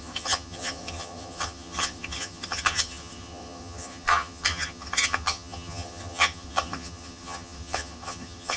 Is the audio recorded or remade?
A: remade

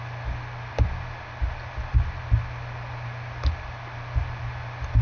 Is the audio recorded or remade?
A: recorded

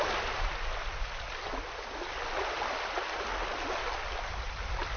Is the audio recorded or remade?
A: recorded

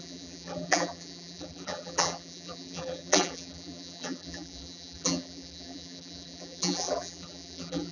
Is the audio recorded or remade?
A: remade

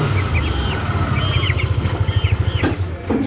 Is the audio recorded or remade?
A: recorded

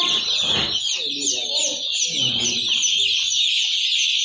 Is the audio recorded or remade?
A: recorded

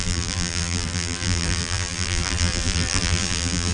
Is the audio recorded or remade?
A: remade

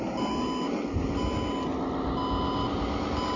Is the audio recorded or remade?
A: recorded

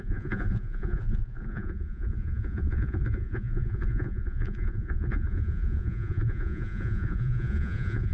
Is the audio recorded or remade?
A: remade